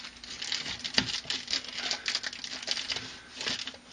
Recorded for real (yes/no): yes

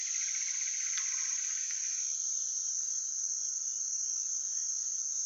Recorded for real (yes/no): no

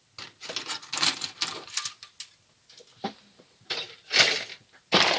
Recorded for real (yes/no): yes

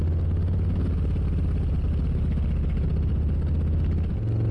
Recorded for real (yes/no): yes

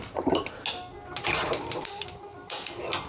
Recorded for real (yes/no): yes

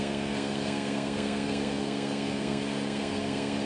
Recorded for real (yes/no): no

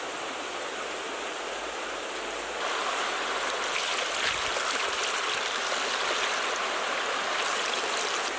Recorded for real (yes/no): yes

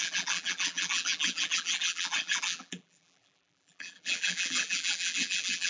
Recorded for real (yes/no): no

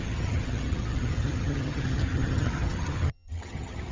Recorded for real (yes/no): no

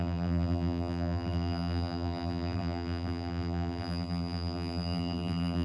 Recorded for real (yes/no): no